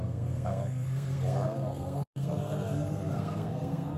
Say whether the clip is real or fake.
fake